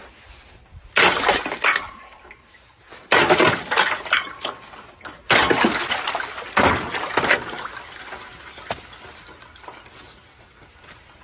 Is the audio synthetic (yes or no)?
no